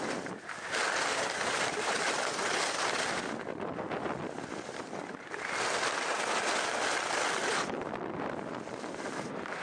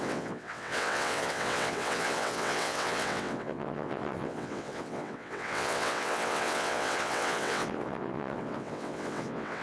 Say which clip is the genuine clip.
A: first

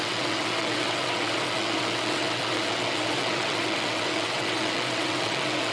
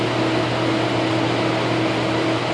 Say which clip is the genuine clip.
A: second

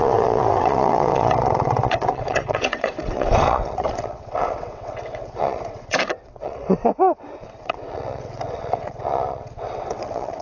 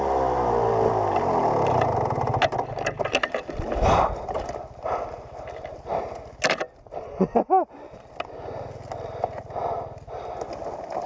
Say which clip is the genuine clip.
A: second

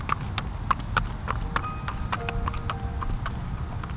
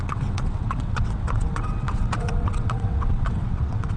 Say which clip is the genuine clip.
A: first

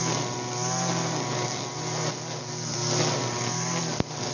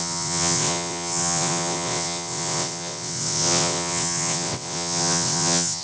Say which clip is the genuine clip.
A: first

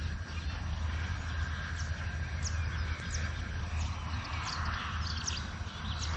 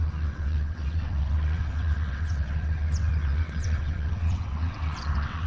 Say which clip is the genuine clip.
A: first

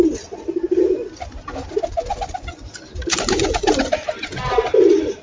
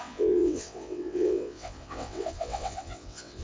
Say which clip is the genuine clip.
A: first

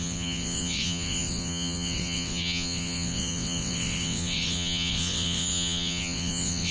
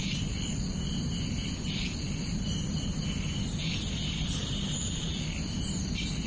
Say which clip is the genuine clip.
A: second